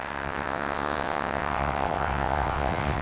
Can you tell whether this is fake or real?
fake